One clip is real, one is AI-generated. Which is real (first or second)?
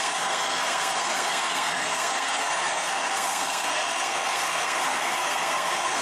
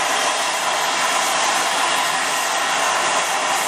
second